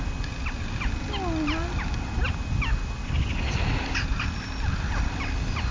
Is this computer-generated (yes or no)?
no